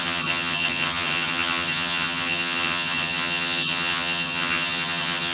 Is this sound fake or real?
fake